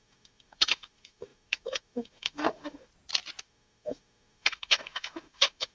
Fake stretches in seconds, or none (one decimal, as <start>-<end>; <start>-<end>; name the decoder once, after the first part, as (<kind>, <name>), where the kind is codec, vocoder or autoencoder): 0.0-2.9 (autoencoder, DAC-VAE); 3.4-5.7